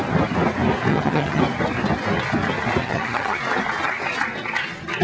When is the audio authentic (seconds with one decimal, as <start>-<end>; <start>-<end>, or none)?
0.0-0.9; 1.4-2.8; 3.4-5.0